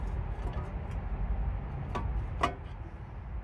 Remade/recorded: recorded